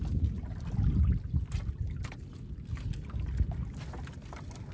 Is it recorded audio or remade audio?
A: recorded